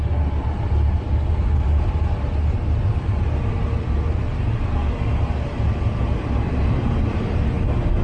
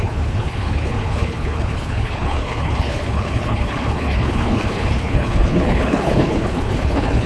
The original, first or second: first